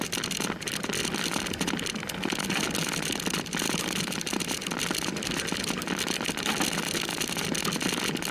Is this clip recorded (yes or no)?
yes